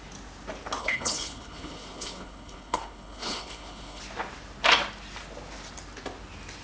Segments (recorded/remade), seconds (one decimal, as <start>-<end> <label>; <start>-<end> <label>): 0.0-0.8 recorded; 0.8-4.0 remade; 4.0-6.6 recorded